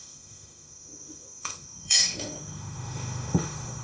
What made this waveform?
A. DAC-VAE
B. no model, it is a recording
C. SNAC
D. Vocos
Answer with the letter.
A